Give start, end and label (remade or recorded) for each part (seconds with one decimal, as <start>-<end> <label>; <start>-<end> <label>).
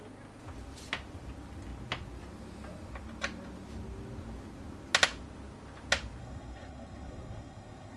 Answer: 0.0-6.2 recorded; 6.2-8.0 remade